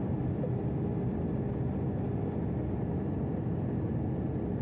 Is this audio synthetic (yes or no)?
no